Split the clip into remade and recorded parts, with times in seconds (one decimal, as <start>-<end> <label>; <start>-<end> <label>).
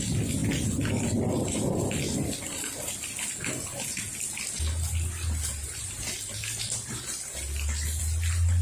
0.0-8.6 recorded